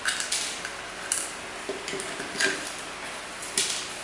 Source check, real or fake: real